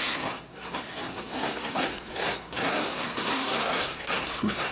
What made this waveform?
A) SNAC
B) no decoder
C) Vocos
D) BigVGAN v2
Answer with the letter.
A